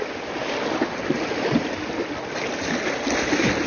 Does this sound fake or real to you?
real